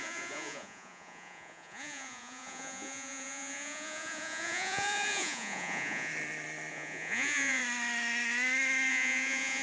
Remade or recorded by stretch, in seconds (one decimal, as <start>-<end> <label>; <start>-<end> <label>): 0.0-6.1 remade; 6.1-6.7 recorded; 6.7-7.6 remade; 7.6-8.9 recorded; 8.9-9.6 remade